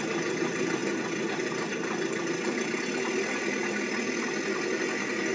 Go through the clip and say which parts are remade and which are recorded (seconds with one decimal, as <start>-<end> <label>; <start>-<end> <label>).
0.0-5.3 recorded